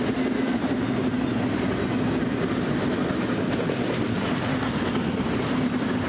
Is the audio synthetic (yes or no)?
no